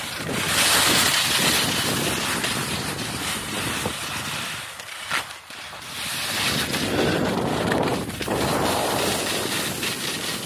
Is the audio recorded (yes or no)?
yes